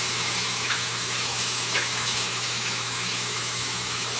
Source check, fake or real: fake